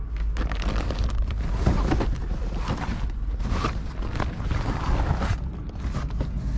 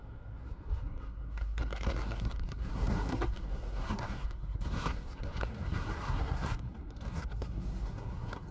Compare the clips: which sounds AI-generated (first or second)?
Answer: second